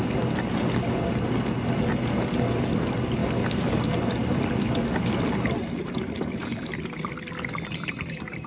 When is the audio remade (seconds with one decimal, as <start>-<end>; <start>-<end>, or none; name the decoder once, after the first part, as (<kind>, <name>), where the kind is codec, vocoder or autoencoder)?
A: none